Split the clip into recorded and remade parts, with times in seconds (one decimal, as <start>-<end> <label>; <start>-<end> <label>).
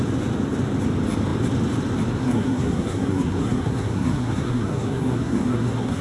0.0-2.2 recorded; 2.2-6.0 remade